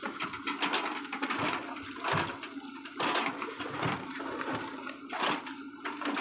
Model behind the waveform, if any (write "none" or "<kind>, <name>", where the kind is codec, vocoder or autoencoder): none